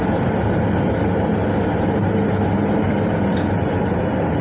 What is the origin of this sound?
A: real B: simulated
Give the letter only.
A